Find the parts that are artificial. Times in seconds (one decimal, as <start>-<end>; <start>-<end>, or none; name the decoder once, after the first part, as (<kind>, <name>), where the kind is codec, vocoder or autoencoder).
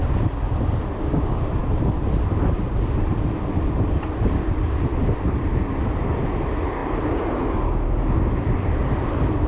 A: 1.6-6.0 (vocoder, BigVGAN v2)